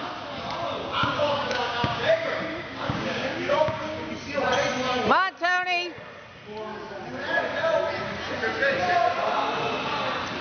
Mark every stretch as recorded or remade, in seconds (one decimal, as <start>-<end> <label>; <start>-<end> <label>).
0.0-0.8 recorded; 0.8-4.1 remade; 4.1-10.4 recorded